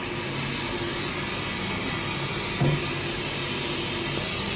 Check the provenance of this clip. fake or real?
real